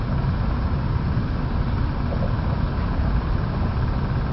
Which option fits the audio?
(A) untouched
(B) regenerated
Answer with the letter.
A